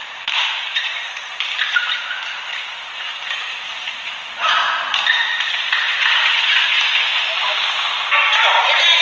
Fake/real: real